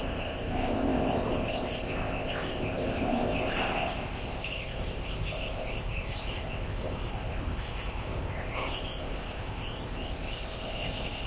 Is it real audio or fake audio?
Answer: fake